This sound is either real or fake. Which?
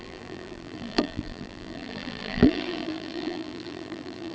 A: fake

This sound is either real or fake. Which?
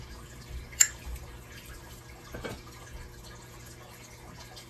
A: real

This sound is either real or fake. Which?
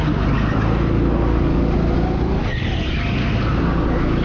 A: real